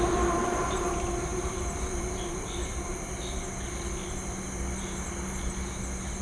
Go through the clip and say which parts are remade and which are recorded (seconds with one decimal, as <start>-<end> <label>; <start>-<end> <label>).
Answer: 0.0-6.2 recorded